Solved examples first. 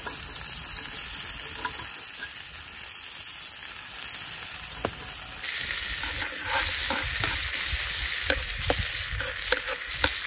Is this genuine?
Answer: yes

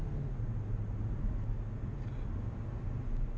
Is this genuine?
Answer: yes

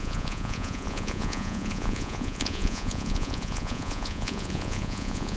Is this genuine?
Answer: no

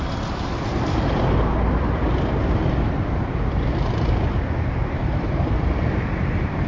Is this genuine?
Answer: no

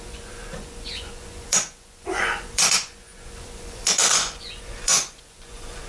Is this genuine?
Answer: no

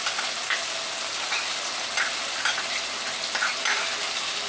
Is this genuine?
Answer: yes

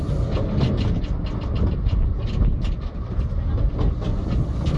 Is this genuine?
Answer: yes